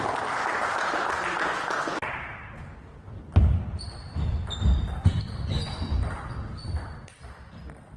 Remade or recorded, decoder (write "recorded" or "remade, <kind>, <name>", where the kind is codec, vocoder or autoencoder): recorded